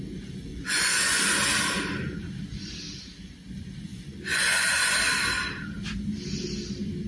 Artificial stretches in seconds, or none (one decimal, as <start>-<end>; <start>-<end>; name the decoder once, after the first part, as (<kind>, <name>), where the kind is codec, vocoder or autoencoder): 0.5-1.2 (vocoder, Vocos); 3.9-4.9